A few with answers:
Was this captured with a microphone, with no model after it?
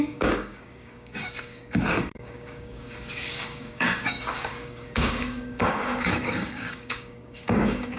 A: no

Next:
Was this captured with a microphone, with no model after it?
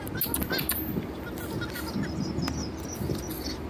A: yes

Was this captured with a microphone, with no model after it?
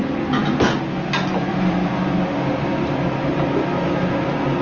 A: yes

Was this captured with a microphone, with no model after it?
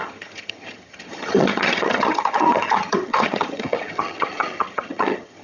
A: no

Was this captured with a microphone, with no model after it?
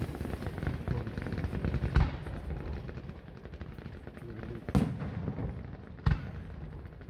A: yes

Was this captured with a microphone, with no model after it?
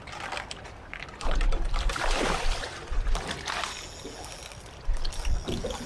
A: yes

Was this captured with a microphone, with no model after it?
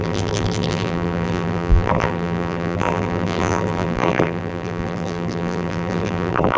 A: no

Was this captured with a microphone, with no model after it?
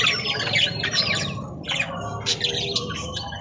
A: yes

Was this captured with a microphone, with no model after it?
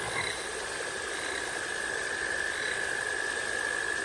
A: yes